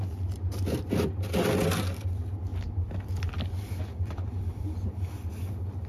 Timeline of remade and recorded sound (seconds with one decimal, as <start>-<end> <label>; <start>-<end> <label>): 0.0-5.9 recorded